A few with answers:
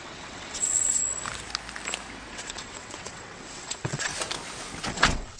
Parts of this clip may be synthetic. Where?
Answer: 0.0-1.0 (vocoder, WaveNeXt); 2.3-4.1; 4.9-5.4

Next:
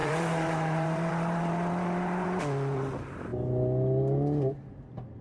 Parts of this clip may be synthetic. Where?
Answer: 0.0-2.4 (vocoder, BigVGAN v2)

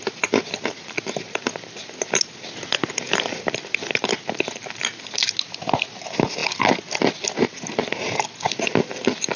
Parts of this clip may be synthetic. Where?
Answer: none

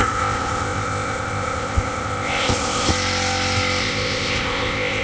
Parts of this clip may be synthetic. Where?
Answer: 0.0-2.9 (codec, ZipCodec); 3.8-5.0

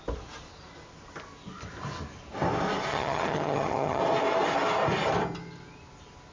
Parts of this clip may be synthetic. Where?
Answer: 2.9-4.0 (vocoder, HiFi-GAN)

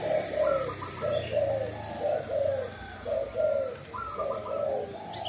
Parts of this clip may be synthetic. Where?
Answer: none

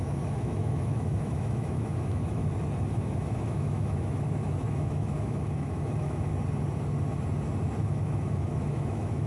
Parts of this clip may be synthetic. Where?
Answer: 0.0-2.4 (autoencoder, DAC-VAE); 2.9-6.3; 7.8-9.3